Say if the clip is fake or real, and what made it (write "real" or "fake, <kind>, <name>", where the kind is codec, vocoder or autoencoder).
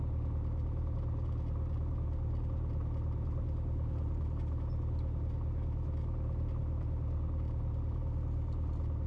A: real